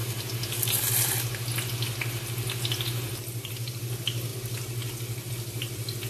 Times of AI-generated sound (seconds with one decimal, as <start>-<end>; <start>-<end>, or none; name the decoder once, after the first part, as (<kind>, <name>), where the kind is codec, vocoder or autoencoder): none